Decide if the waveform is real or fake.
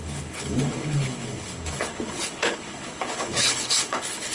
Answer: fake